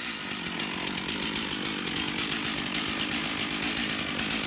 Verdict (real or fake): real